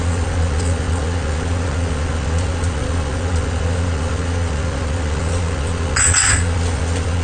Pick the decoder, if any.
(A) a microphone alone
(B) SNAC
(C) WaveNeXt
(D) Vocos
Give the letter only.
D